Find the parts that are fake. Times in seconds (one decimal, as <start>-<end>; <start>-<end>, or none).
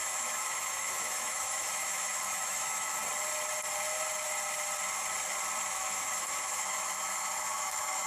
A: 0.0-3.0; 5.7-8.1